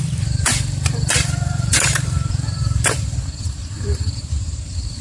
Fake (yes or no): yes